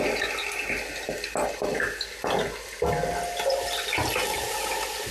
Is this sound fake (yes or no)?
no